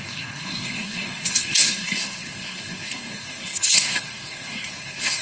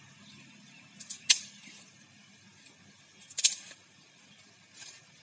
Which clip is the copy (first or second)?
first